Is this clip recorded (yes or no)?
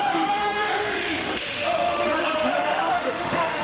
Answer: no